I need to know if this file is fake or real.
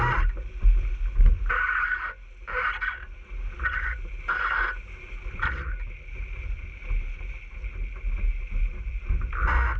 real